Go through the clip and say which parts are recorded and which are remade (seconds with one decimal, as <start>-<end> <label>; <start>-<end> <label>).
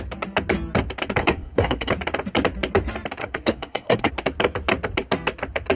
0.0-1.2 recorded; 1.2-1.9 remade; 1.9-3.2 recorded; 3.2-4.1 remade; 4.1-5.8 recorded